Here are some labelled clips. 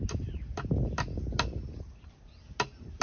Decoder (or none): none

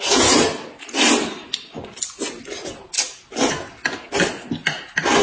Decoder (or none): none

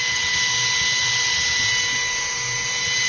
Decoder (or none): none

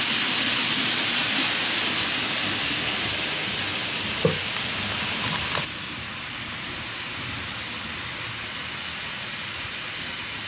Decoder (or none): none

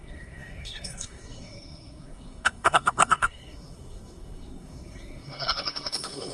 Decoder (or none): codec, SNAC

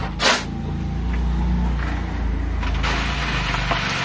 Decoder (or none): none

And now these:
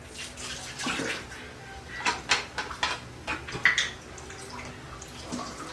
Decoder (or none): none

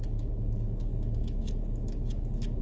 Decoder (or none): autoencoder, DAC-VAE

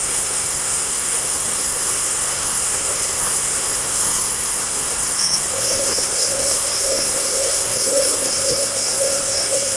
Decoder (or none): codec, SNAC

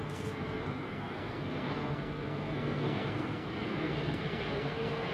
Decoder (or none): codec, SNAC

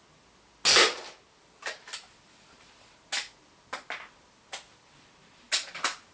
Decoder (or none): none